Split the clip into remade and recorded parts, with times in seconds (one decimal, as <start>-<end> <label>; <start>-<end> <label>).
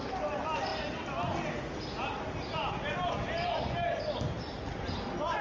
0.0-5.4 recorded